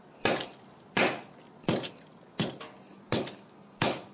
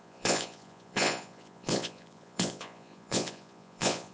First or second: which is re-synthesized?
second